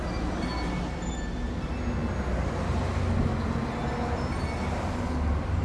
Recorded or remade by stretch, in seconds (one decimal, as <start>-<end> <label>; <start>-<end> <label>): 0.0-5.6 recorded